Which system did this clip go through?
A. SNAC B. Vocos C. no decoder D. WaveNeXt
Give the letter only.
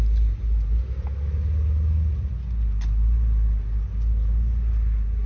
C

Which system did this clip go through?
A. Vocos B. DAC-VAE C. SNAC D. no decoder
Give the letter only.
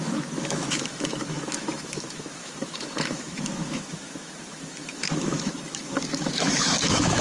B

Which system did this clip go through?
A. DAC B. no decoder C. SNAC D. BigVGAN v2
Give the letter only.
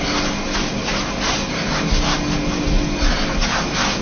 B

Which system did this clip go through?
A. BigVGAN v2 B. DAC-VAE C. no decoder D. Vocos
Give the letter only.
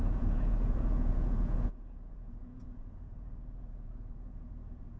D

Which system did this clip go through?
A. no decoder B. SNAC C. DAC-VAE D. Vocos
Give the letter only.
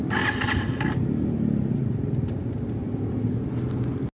A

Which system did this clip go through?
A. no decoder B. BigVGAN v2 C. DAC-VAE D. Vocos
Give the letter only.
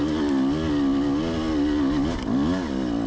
A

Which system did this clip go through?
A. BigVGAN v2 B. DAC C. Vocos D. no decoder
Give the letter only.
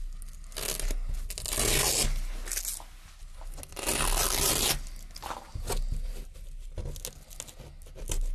D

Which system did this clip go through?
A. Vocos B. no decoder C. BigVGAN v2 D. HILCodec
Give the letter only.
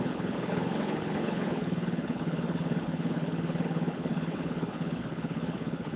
D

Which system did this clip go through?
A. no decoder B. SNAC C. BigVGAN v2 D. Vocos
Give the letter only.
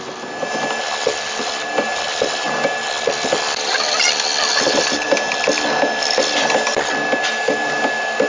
A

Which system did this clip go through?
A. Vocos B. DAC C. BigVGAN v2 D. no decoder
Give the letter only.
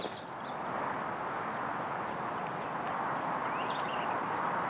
D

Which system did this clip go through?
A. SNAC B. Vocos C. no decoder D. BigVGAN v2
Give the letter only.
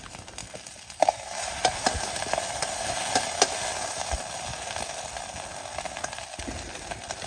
C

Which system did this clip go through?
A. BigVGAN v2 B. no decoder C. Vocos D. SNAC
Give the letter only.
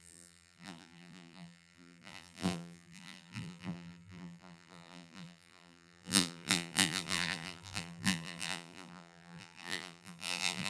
A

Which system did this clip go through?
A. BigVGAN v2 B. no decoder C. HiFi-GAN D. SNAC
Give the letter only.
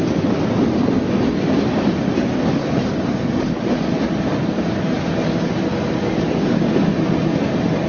B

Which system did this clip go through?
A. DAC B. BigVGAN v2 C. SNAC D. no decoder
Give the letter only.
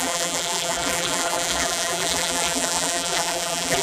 B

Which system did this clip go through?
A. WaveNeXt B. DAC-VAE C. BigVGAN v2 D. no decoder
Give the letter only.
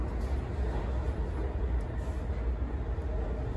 D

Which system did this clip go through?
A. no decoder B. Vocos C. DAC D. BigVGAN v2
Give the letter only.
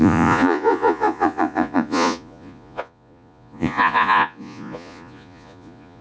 B